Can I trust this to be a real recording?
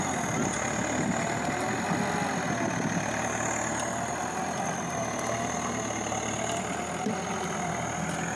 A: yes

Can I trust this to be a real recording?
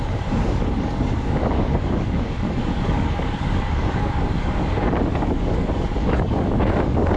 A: no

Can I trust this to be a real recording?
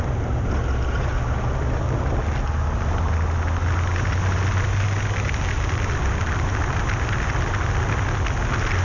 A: yes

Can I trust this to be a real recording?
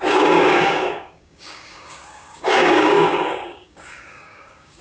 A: no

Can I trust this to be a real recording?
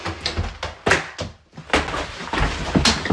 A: yes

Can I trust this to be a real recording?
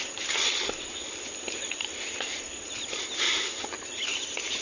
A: yes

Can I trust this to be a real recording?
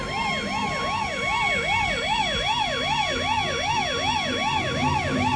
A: yes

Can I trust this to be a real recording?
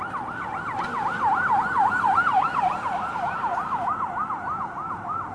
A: yes